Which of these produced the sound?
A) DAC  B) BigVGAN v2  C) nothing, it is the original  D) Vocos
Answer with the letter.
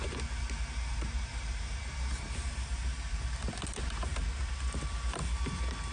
B